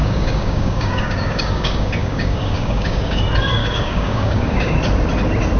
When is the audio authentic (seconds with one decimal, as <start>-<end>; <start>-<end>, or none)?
3.2-3.6; 4.8-5.6